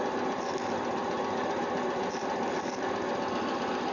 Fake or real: real